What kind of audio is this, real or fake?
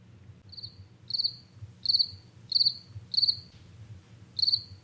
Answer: real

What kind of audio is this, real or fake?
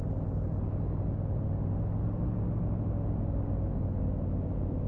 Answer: real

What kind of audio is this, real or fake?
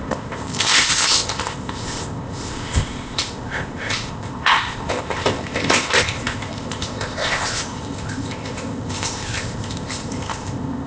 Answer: fake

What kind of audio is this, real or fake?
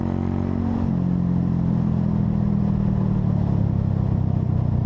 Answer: real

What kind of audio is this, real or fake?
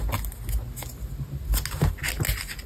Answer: real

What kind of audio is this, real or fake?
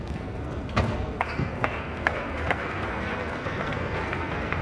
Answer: fake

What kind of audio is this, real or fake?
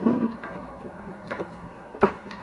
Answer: fake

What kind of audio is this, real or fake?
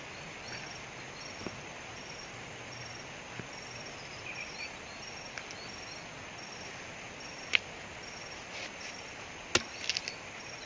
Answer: real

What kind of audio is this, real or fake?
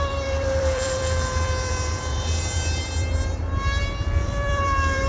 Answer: fake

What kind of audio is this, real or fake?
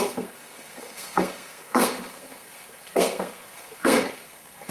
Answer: fake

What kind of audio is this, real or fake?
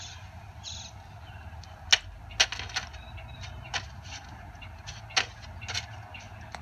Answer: real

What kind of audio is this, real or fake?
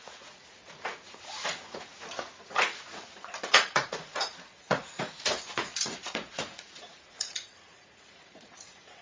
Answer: fake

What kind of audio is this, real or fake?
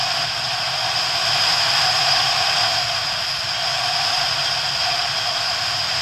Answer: real